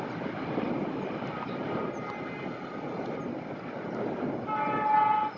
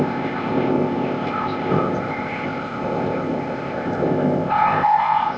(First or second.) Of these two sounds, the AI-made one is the second